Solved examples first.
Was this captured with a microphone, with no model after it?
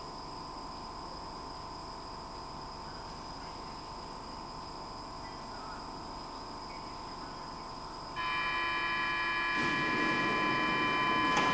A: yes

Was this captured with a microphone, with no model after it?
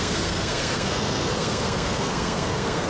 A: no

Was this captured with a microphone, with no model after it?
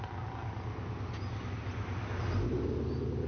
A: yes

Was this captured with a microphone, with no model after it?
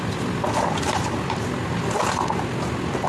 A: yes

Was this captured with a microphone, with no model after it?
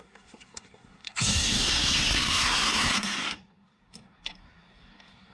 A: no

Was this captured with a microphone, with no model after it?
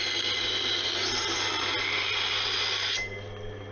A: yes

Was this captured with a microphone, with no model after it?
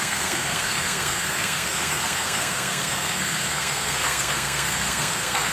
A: no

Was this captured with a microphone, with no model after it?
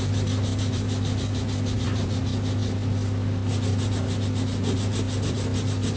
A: yes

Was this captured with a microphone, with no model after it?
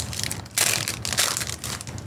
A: yes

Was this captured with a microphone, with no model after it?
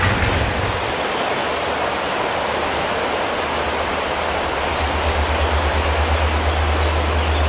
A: yes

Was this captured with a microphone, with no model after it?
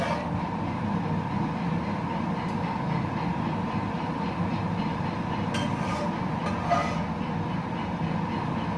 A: yes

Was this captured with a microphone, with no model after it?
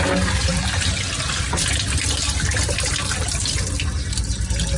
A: yes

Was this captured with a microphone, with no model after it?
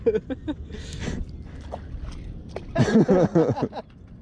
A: yes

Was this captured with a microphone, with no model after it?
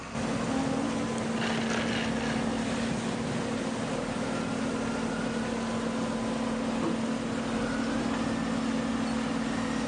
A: yes